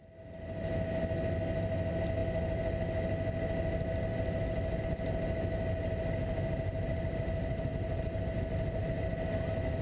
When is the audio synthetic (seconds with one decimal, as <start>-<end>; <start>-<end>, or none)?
none